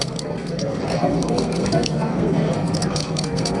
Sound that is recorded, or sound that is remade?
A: remade